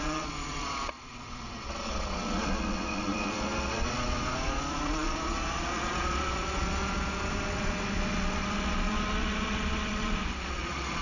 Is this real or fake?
fake